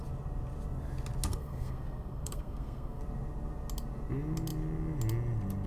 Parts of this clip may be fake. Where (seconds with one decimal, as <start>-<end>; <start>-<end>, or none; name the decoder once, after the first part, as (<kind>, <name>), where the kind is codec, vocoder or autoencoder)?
1.3-3.0 (codec, SNAC)